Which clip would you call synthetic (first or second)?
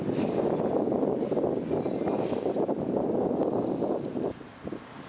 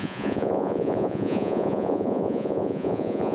second